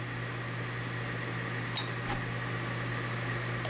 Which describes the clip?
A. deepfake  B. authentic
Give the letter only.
B